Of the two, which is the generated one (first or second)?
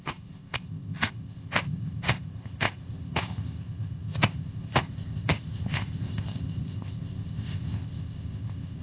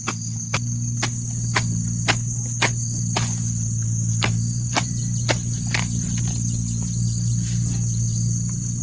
first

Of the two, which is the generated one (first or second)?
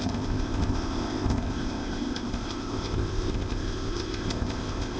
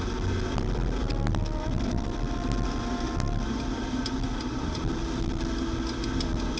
first